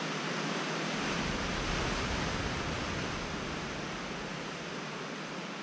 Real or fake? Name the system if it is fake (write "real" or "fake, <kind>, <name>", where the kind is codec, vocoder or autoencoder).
real